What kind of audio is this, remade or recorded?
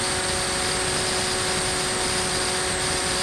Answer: recorded